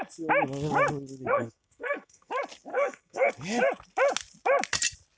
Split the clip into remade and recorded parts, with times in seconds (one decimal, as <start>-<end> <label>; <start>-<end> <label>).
0.0-1.3 recorded; 1.3-2.3 remade; 2.3-2.7 recorded; 2.7-3.3 remade; 3.3-5.2 recorded